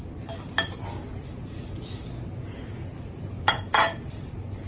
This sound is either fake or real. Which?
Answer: real